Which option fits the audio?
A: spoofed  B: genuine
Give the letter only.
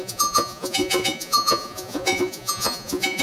A